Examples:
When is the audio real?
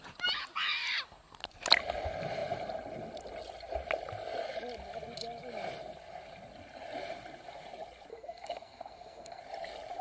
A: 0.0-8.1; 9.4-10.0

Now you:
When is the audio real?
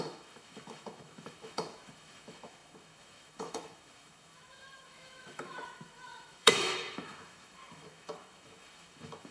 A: none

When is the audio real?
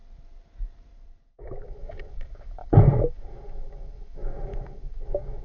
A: 0.0-1.4